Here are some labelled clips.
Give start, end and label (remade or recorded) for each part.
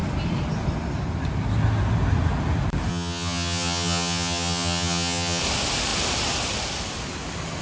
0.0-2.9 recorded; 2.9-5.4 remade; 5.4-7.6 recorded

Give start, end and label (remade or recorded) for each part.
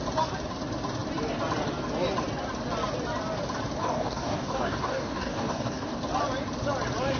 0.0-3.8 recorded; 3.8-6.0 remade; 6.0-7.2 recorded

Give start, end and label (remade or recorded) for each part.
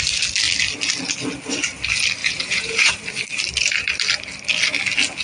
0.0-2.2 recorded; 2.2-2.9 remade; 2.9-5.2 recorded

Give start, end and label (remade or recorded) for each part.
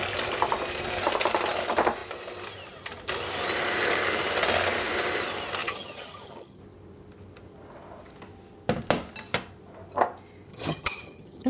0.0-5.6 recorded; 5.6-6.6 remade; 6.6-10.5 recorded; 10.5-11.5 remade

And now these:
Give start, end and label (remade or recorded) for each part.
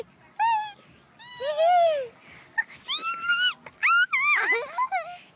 0.0-3.8 recorded; 3.8-5.4 remade